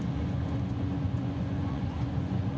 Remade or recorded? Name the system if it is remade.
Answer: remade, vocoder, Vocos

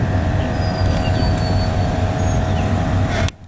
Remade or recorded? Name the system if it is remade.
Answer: recorded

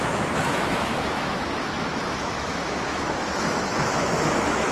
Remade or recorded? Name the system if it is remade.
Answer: remade, autoencoder, DAC-VAE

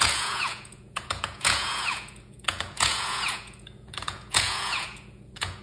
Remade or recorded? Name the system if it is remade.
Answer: remade, vocoder, Vocos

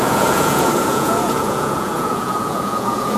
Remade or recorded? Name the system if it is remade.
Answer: remade, vocoder, Vocos